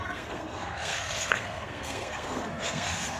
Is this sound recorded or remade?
remade